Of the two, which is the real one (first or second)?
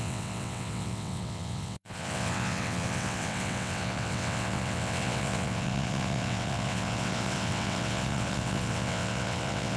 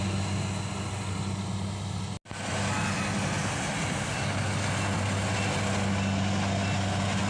second